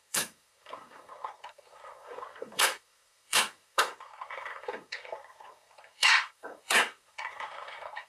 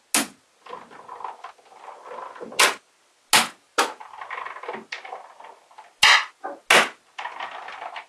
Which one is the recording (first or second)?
second